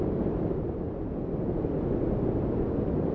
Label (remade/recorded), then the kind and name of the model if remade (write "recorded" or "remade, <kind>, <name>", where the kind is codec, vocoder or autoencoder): remade, vocoder, BigVGAN v2